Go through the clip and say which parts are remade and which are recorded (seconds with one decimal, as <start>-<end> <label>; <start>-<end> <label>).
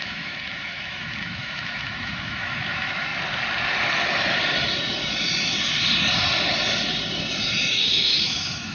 0.0-3.1 remade; 3.1-7.7 recorded; 7.7-8.7 remade